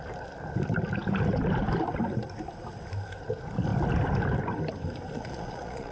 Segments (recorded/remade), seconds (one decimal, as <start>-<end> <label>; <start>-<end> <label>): 0.0-5.1 recorded; 5.1-5.9 remade